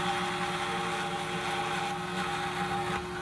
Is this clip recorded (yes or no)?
yes